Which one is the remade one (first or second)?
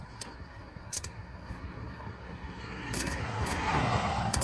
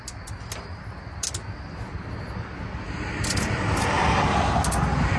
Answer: first